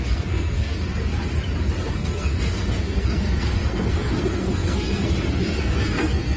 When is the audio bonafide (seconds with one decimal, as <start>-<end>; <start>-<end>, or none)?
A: 1.1-1.9